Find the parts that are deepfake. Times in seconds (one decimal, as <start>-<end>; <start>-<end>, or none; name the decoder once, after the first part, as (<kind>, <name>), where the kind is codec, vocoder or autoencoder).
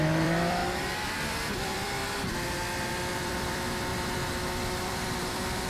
0.0-2.0 (vocoder, BigVGAN v2); 2.8-5.7